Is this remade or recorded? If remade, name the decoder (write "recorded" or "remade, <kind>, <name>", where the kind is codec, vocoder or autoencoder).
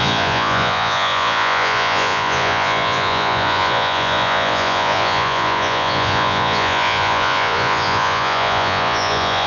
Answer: remade, vocoder, Vocos